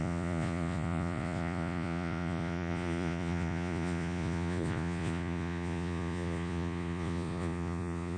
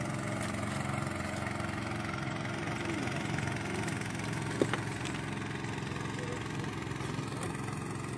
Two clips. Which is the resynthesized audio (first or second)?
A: first